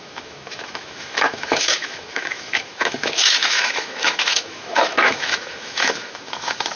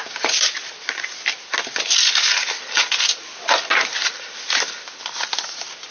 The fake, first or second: first